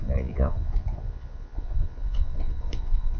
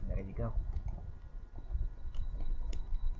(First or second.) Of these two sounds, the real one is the second